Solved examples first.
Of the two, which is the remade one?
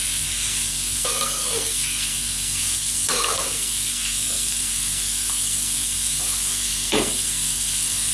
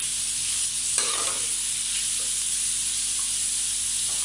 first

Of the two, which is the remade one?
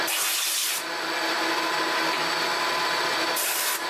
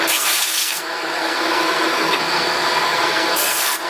second